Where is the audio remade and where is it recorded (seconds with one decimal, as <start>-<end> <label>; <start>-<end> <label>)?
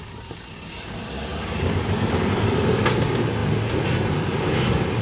0.0-5.0 recorded